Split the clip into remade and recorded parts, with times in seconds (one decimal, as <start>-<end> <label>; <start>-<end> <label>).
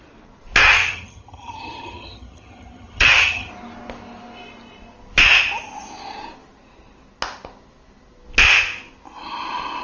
0.0-0.6 recorded; 0.6-3.5 remade; 3.5-9.8 recorded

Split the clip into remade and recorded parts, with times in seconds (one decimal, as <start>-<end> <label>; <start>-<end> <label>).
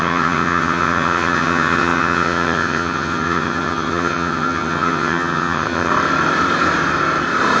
0.0-5.9 remade; 5.9-7.6 recorded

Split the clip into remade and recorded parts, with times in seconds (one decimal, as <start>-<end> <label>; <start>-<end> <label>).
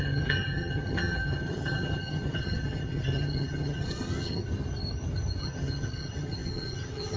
0.0-4.4 remade; 4.4-5.4 recorded; 5.4-7.2 remade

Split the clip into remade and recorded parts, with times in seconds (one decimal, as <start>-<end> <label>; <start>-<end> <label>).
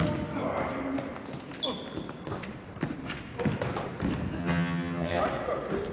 0.0-4.4 recorded; 4.4-5.2 remade; 5.2-5.9 recorded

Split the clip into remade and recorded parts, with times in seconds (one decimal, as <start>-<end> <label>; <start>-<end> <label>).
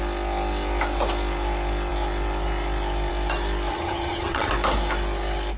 0.0-3.7 recorded; 3.7-4.5 remade; 4.5-5.6 recorded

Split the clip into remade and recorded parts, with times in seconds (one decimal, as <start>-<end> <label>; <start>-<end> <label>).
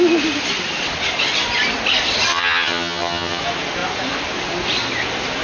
0.0-2.3 recorded; 2.3-3.4 remade; 3.4-5.4 recorded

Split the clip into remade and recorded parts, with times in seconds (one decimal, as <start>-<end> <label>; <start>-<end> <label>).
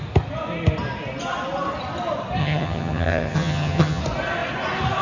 0.0-2.4 recorded; 2.4-4.0 remade; 4.0-5.0 recorded